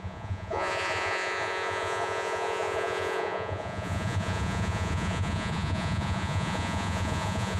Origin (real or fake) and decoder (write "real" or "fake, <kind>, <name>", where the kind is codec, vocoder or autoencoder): fake, vocoder, Vocos